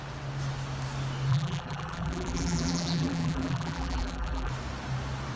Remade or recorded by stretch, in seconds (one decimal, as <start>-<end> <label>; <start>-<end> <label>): 0.0-1.3 recorded; 1.3-4.5 remade; 4.5-5.4 recorded

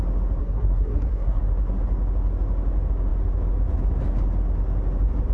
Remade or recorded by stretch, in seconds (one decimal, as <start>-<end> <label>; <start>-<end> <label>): 0.0-0.4 recorded; 0.4-1.4 remade; 1.4-5.3 recorded

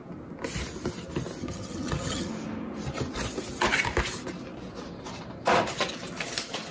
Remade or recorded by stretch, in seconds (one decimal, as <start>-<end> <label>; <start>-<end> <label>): 0.0-1.4 recorded; 1.4-2.3 remade; 2.3-6.7 recorded